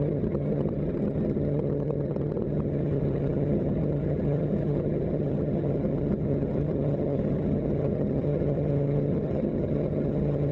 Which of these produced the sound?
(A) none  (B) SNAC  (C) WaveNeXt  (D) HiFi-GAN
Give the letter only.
D